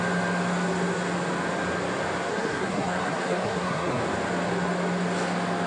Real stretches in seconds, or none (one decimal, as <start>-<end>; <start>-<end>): 0.0-2.3; 4.0-5.7